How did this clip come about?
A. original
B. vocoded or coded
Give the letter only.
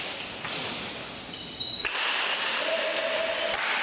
A